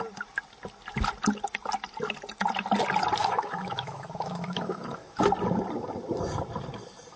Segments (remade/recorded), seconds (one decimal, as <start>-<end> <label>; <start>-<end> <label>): 0.0-3.2 recorded; 3.2-5.2 remade; 5.2-7.2 recorded